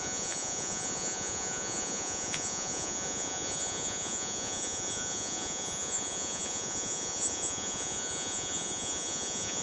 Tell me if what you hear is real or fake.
fake